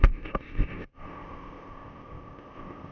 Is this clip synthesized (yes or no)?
yes